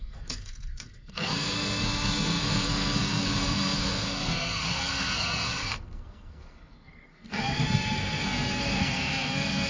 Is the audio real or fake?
fake